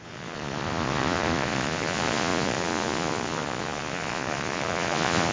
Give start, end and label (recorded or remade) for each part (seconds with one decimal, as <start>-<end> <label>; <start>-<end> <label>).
0.0-5.3 remade